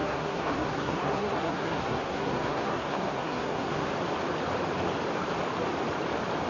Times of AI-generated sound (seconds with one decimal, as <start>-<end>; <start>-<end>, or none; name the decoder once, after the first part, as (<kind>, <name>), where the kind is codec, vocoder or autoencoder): 0.0-3.9 (codec, SNAC)